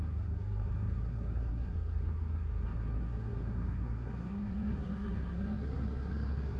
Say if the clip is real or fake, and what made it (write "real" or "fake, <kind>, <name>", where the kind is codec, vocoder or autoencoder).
fake, codec, SNAC